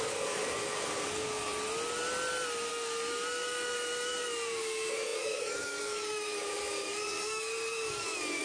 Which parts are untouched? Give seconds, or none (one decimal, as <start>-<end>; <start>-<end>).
1.5-2.7